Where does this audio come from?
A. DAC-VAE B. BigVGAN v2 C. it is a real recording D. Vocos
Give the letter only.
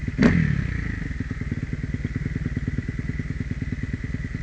C